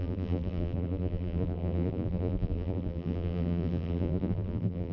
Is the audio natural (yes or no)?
no